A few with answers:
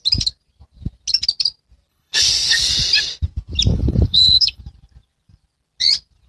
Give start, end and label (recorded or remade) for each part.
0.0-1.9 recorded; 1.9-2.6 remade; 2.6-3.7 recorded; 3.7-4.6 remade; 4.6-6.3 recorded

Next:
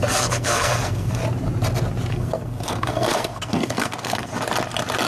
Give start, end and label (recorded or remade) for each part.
0.0-1.2 remade; 1.2-2.1 recorded; 2.1-4.3 remade; 4.3-5.1 recorded

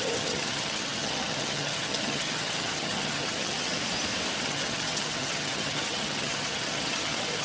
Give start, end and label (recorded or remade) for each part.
0.0-3.8 remade; 3.8-4.4 recorded; 4.4-7.4 remade

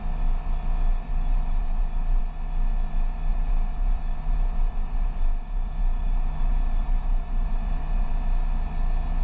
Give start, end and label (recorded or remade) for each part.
0.0-0.9 recorded; 0.9-2.2 remade; 2.2-3.3 recorded; 3.3-8.1 remade; 8.1-9.2 recorded

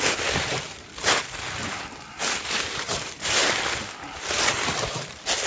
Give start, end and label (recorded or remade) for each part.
0.0-5.5 recorded